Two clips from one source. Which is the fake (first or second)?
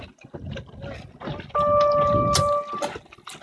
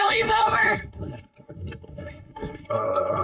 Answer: second